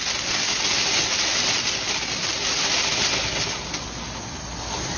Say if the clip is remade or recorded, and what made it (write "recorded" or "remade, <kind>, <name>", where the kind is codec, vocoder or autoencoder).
recorded